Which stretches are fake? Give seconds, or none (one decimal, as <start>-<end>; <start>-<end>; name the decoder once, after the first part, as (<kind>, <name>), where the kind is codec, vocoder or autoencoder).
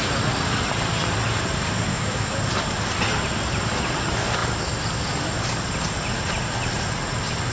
1.9-2.4 (autoencoder, DAC-VAE)